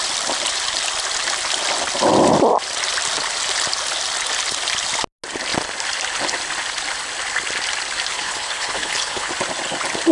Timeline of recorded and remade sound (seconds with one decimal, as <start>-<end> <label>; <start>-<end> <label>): 0.0-8.1 recorded; 8.1-9.3 remade; 9.3-10.1 recorded